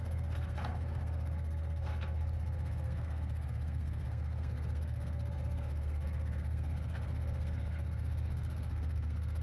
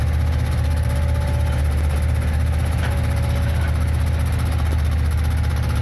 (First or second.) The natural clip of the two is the second